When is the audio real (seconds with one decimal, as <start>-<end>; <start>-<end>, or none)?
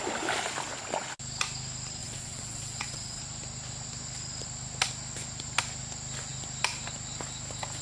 0.0-2.0; 3.2-7.8